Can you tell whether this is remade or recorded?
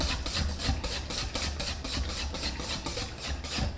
recorded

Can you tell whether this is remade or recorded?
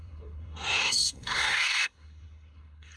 remade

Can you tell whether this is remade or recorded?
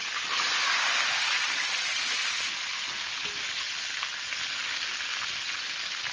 recorded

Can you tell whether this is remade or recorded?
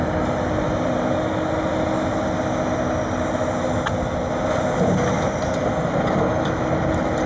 recorded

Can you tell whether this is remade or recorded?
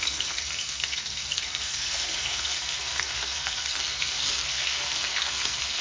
remade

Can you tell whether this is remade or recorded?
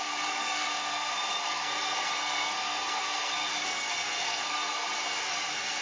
remade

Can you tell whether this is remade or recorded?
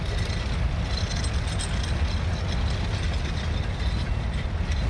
recorded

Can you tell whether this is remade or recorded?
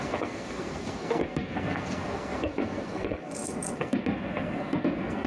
remade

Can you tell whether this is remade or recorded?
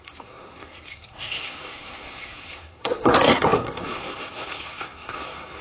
remade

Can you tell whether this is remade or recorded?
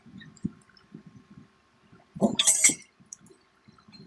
recorded